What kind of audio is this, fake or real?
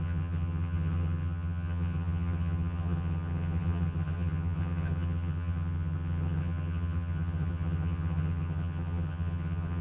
fake